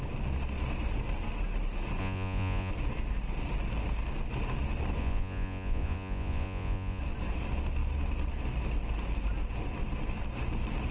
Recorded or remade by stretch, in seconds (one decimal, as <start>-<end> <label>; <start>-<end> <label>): 0.0-2.0 recorded; 2.0-2.7 remade; 2.7-5.0 recorded; 5.0-7.0 remade; 7.0-10.9 recorded